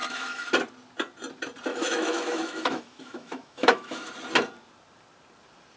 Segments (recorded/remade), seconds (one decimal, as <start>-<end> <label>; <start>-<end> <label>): 0.0-0.5 remade; 0.5-1.7 recorded; 1.7-4.1 remade; 4.1-5.8 recorded